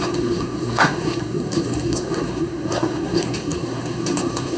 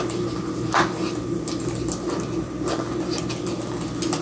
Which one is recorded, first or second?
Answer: second